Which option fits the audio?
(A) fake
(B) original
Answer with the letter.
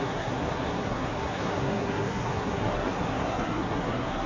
A